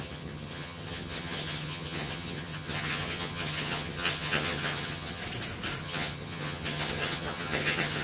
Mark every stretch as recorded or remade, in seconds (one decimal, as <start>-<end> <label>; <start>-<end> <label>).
0.0-5.2 remade; 5.2-5.8 recorded; 5.8-8.0 remade